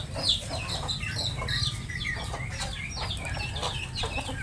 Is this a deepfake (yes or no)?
no